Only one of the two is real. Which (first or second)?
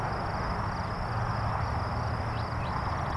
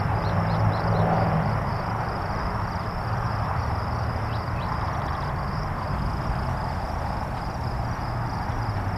first